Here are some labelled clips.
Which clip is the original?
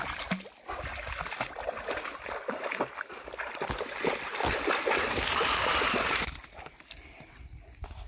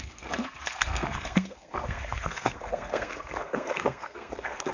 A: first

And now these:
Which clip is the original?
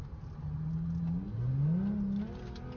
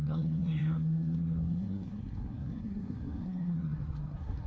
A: first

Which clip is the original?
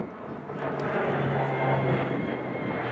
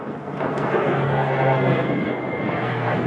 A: first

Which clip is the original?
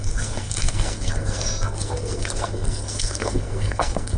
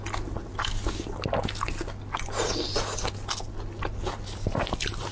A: second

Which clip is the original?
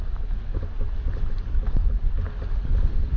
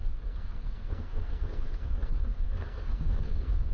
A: first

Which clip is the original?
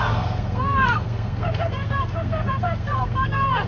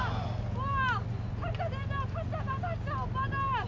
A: second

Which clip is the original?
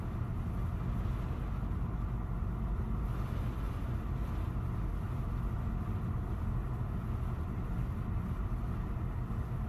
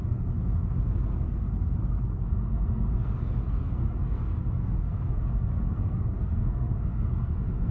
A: first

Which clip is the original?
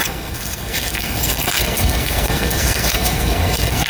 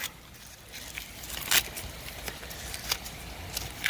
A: second